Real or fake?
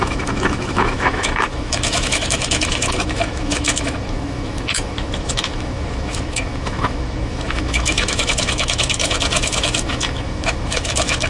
fake